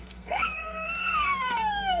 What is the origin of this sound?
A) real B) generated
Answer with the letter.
B